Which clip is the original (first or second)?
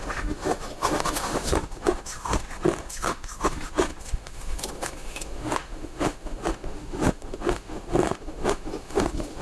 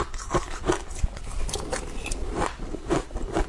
second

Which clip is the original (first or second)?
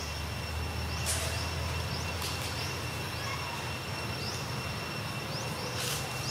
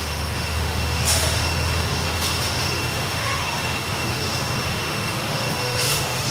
first